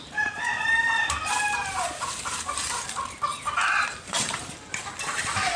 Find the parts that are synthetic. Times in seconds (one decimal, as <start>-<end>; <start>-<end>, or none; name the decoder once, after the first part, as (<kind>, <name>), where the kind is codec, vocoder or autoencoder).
0.0-3.3 (vocoder, BigVGAN v2); 4.0-5.6

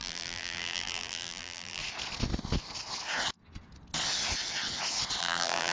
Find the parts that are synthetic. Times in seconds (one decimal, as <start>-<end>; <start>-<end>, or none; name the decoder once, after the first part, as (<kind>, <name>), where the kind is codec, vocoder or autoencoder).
0.0-1.8 (vocoder, BigVGAN v2); 5.2-5.7